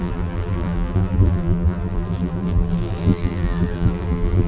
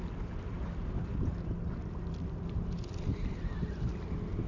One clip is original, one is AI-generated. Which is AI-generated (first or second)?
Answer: first